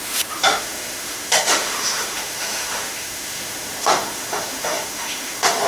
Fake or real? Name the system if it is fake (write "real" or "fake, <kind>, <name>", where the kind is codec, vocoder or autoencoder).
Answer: fake, autoencoder, DAC-VAE